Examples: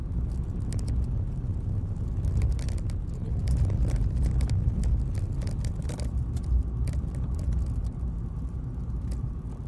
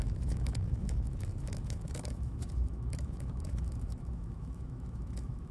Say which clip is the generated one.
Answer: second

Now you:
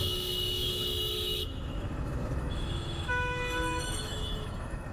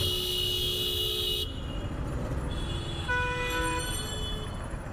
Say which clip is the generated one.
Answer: first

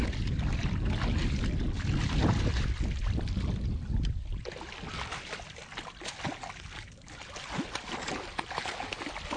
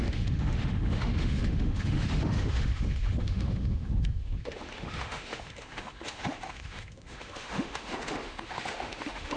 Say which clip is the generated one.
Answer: second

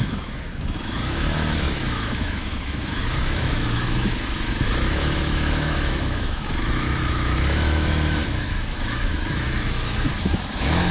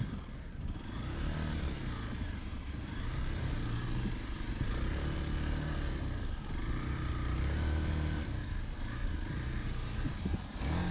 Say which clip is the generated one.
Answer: first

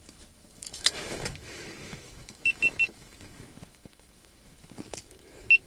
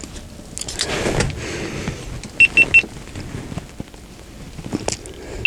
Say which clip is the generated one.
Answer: first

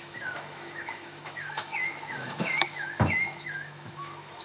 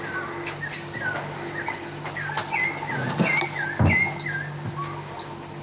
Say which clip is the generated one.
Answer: first